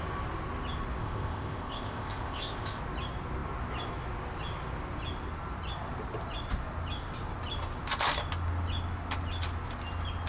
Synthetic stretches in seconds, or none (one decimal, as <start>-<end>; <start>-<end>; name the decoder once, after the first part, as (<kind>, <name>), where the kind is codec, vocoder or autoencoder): 1.0-2.8 (codec, ZipCodec)